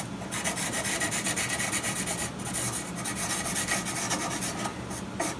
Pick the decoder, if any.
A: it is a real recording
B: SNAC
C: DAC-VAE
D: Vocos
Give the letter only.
A